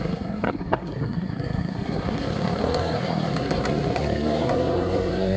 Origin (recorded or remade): remade